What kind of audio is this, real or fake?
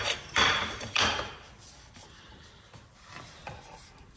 fake